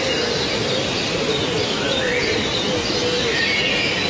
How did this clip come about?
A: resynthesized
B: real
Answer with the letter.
B